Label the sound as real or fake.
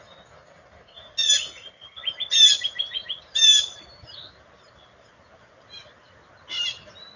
real